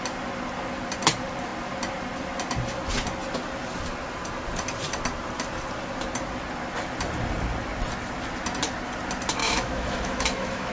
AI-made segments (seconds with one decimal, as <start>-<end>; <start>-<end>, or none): 9.4-10.7